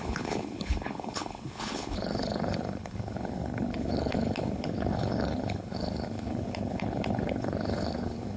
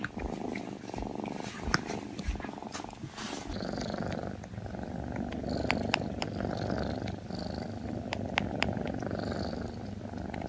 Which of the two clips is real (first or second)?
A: second